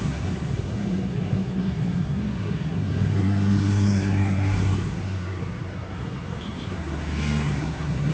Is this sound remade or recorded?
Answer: remade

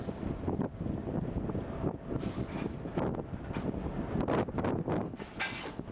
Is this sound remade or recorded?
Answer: recorded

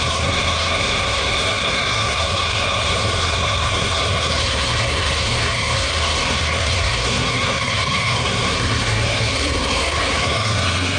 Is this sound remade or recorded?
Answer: remade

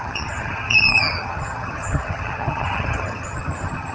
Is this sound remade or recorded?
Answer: remade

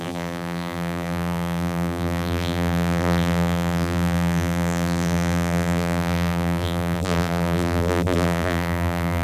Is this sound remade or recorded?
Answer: remade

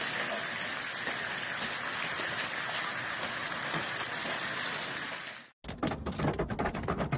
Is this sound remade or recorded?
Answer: recorded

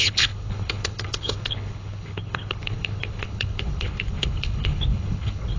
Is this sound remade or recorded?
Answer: remade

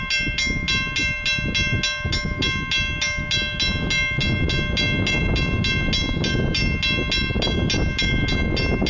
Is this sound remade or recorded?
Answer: recorded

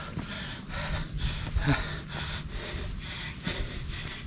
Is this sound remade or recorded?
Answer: recorded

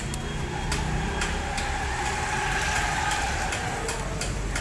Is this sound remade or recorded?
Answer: recorded